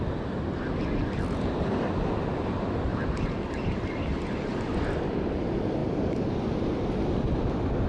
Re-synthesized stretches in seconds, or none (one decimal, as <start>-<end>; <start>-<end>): none

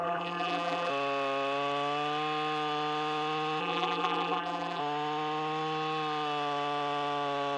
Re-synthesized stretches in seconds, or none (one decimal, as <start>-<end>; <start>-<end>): 0.0-0.9; 3.6-4.8

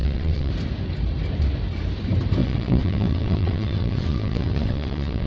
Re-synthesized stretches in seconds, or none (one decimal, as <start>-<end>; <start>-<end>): 0.0-0.5; 2.4-5.3

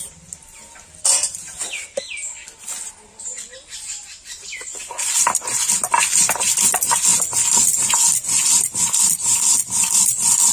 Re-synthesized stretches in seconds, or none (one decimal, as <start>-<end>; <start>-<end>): none

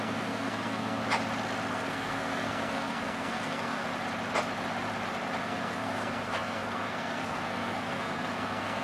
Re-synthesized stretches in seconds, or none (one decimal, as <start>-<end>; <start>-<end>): 0.0-1.0; 1.7-3.9; 5.4-8.8

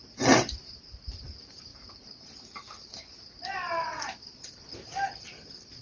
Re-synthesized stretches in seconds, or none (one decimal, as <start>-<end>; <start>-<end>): 0.0-0.5; 1.7-5.2

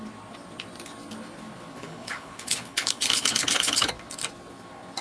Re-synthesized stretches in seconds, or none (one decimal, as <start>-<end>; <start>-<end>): 1.8-3.9